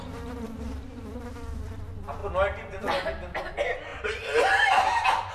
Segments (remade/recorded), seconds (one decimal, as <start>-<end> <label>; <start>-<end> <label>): 0.0-3.9 recorded; 3.9-5.3 remade